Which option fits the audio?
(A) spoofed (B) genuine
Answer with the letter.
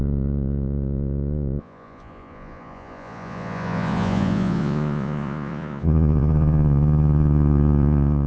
A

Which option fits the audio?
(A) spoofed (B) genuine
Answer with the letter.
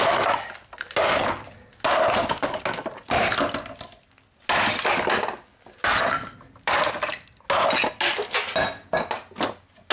B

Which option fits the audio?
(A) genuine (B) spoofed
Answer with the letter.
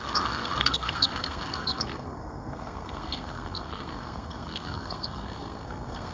B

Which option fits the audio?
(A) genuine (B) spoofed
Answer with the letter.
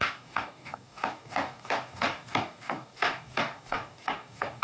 B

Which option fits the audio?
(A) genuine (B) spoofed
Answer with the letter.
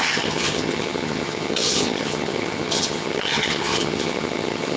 B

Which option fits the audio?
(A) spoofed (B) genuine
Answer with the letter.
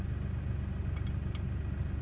B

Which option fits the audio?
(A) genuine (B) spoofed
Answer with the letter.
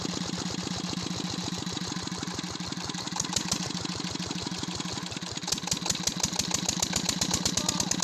A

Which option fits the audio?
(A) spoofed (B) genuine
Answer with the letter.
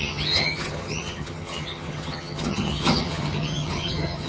A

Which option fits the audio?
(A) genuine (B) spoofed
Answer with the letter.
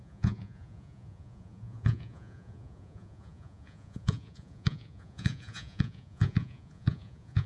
B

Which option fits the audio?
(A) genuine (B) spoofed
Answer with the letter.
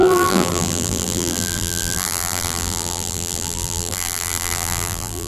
B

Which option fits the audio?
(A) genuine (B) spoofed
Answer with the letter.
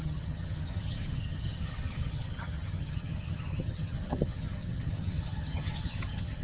B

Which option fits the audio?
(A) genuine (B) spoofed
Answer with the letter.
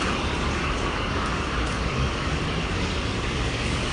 B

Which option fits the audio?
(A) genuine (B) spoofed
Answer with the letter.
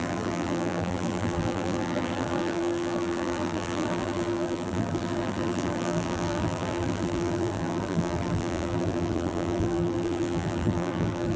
B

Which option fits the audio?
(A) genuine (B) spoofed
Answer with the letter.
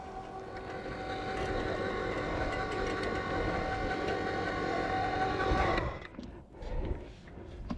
A